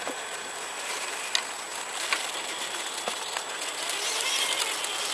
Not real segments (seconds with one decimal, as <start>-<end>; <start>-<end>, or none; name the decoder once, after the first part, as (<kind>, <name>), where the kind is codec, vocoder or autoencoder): none